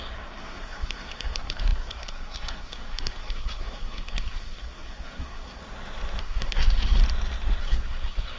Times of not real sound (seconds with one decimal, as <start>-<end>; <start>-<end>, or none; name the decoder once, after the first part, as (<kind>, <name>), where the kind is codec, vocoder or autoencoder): 0.0-5.6 (codec, SNAC); 6.2-7.0; 7.6-8.4